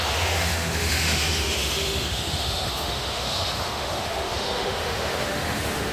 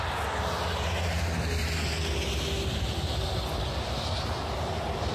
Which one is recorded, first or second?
second